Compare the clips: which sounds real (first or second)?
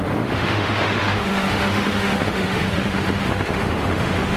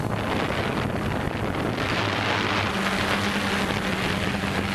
second